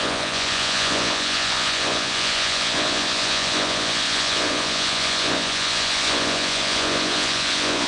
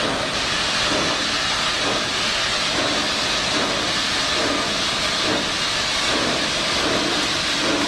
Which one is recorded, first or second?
second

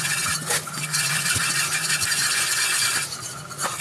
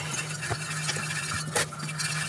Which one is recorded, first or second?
second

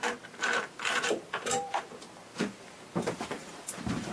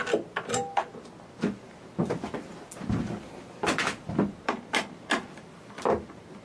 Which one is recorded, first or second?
second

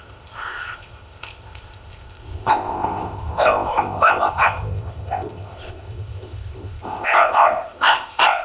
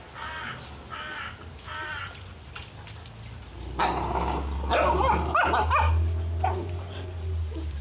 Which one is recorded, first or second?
second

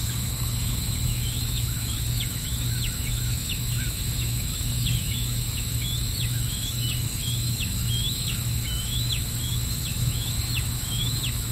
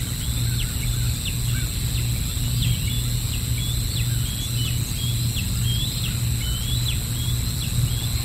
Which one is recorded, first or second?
second